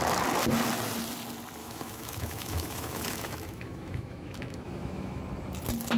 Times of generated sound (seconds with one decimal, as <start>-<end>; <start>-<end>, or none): 1.6-5.2